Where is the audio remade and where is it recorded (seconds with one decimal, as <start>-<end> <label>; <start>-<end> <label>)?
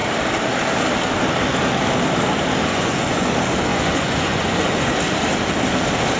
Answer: 0.0-2.7 recorded; 2.7-3.3 remade; 3.3-3.7 recorded; 3.7-4.9 remade; 4.9-6.2 recorded